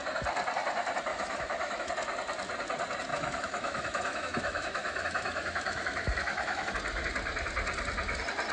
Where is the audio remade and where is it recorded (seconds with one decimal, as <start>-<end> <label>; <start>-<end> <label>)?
0.0-1.1 recorded; 1.1-1.9 remade; 1.9-3.1 recorded; 3.1-6.7 remade; 6.7-8.5 recorded